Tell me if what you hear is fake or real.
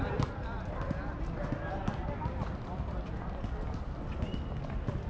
real